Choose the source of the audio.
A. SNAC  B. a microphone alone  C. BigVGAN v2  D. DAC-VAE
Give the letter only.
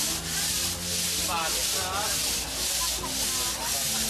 B